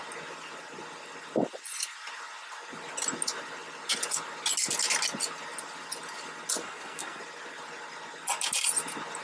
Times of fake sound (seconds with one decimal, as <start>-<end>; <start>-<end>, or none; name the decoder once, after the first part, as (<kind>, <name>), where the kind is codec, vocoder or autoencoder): 6.6-7.2 (codec, SNAC)